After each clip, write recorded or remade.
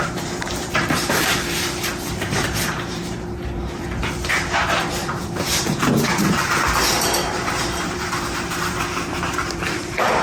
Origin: remade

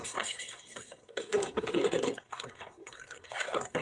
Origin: remade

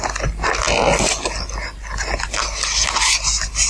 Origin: recorded